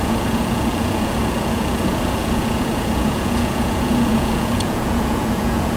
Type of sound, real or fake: fake